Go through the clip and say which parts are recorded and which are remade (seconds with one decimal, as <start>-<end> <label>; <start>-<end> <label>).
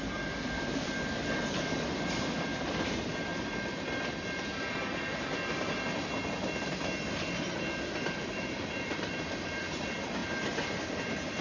0.0-3.3 remade; 3.3-8.0 recorded; 8.0-11.4 remade